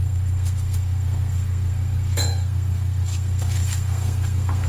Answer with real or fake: fake